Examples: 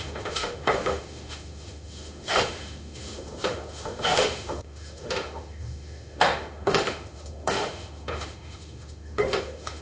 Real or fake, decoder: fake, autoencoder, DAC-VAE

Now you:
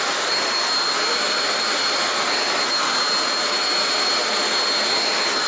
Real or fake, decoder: real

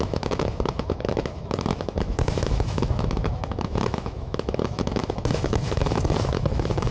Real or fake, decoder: fake, autoencoder, DAC-VAE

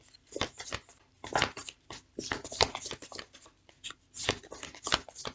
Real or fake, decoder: real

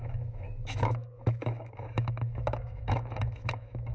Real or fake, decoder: fake, autoencoder, DAC-VAE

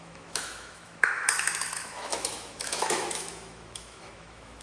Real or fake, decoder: fake, autoencoder, DAC-VAE